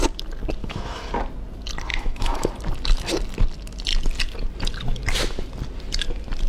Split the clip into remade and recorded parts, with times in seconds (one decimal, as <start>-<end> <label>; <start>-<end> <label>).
0.0-0.6 recorded; 0.6-1.1 remade; 1.1-1.9 recorded; 1.9-2.5 remade; 2.5-6.5 recorded